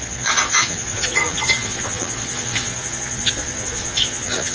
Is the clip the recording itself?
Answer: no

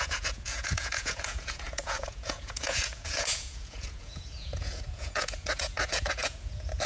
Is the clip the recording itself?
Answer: no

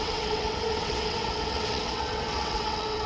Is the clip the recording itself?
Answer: no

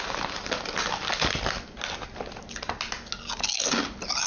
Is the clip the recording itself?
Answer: yes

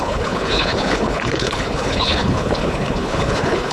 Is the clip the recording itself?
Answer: no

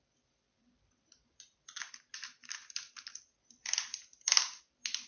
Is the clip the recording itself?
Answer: yes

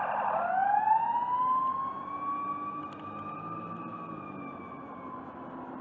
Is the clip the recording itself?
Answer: yes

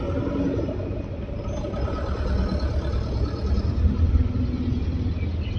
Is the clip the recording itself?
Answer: yes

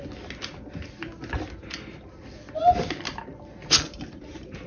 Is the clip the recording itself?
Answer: yes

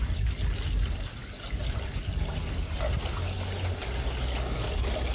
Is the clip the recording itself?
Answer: yes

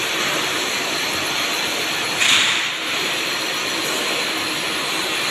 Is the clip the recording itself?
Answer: no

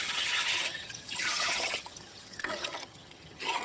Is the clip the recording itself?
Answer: no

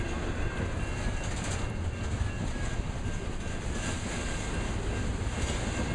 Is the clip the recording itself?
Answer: yes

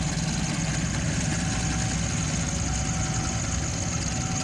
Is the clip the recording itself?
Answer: yes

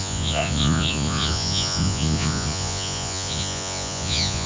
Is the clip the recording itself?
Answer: no